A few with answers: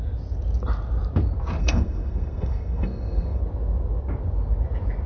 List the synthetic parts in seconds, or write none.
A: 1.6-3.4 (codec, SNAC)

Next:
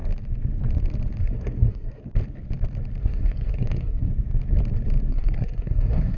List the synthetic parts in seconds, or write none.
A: 1.2-2.0 (codec, SNAC); 3.0-4.1; 5.1-6.2

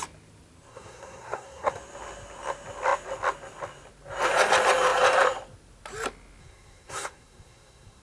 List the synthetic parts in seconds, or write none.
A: 0.7-1.7 (codec, SNAC); 6.4-8.0

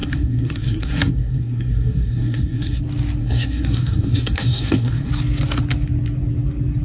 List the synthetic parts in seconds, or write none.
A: 0.0-2.8 (codec, SNAC); 3.2-5.1

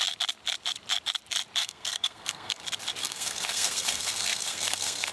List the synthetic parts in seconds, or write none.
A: 1.6-2.6 (codec, SNAC); 3.0-5.1

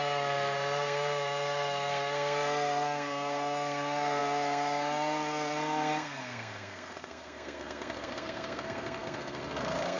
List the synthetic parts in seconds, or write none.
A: 0.0-10.0 (codec, SNAC)

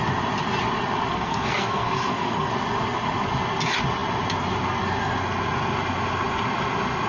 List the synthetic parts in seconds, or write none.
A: 1.1-2.5 (codec, SNAC)